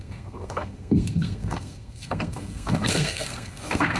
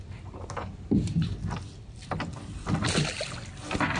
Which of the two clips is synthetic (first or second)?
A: first